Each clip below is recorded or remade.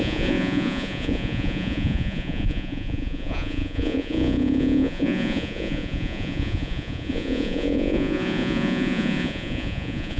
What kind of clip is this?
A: remade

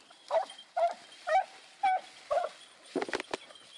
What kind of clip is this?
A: recorded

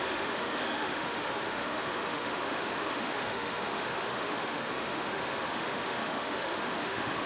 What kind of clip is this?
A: remade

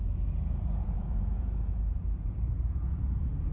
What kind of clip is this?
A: remade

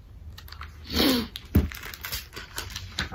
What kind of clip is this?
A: recorded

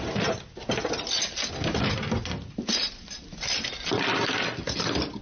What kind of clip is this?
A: recorded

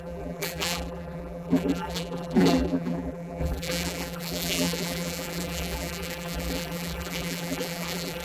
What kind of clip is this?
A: remade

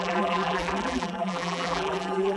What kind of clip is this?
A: remade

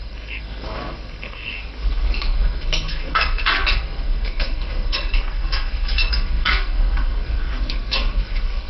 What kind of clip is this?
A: remade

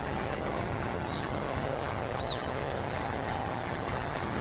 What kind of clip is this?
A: remade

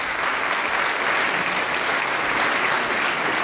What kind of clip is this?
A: recorded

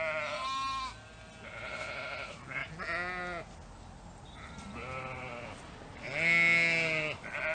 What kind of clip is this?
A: recorded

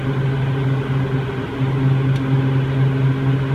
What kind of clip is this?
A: recorded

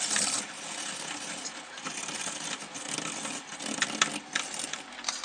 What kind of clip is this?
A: recorded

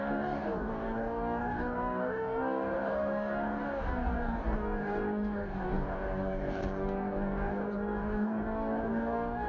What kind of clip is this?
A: remade